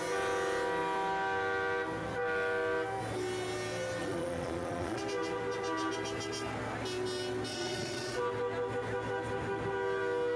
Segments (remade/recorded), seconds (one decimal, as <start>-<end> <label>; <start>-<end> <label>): 0.0-4.0 recorded; 4.0-5.0 remade; 5.0-7.5 recorded; 7.5-8.2 remade; 8.2-10.4 recorded